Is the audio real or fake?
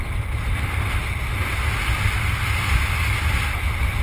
real